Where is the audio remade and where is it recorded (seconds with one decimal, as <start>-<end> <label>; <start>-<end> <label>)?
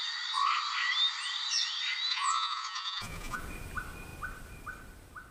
0.0-2.1 recorded; 2.1-3.4 remade; 3.4-5.3 recorded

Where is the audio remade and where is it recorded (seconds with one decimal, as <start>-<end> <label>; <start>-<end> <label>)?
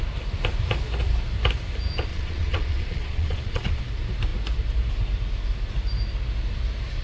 0.0-2.1 recorded; 2.1-3.8 remade; 3.8-7.0 recorded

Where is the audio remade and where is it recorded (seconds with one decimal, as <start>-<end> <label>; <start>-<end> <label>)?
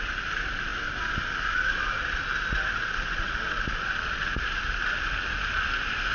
0.0-6.1 recorded